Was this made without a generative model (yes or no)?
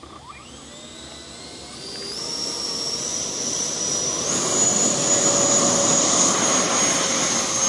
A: yes